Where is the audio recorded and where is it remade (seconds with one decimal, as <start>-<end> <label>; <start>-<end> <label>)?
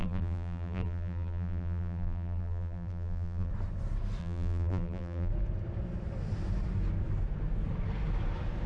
0.0-3.5 remade; 3.5-4.2 recorded; 4.2-5.3 remade; 5.3-8.7 recorded